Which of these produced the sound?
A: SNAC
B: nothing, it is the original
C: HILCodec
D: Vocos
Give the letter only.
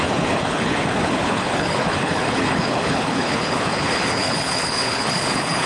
C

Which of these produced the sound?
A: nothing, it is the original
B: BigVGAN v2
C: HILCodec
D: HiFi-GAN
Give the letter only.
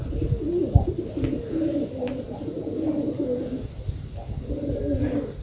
A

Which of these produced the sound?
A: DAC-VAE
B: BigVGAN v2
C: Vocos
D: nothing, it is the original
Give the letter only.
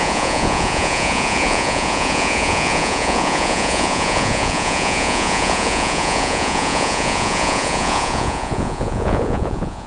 C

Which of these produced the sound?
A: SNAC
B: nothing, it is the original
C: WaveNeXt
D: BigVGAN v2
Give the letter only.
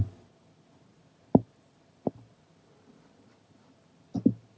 B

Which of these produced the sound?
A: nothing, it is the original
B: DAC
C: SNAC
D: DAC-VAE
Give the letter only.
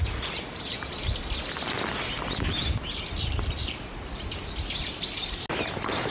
A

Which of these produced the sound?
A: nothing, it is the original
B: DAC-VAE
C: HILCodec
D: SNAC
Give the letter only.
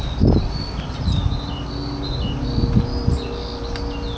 A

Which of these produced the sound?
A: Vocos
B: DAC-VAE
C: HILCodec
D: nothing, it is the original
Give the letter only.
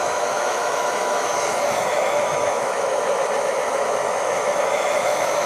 B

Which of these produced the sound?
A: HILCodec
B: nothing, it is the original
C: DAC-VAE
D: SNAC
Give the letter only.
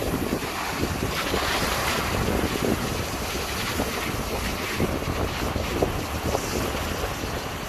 B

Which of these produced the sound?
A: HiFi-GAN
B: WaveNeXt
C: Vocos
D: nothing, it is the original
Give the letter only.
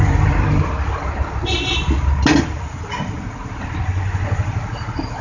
D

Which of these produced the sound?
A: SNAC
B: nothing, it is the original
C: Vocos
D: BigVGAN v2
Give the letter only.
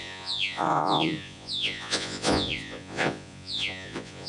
C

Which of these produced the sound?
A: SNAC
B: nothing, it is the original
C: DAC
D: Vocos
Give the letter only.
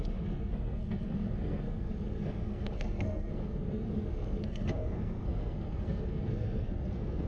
A